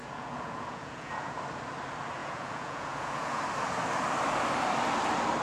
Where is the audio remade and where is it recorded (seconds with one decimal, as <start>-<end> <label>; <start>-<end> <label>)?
0.0-1.4 remade; 1.4-2.2 recorded; 2.2-3.4 remade; 3.4-5.4 recorded